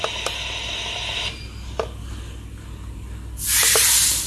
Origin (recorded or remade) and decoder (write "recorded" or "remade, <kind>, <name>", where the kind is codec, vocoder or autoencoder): recorded